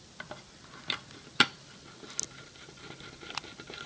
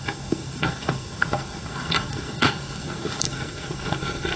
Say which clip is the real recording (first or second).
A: first